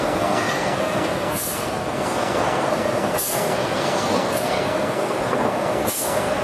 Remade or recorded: remade